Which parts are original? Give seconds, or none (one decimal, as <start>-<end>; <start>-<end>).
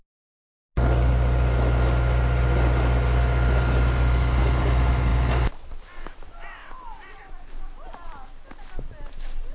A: 0.0-9.5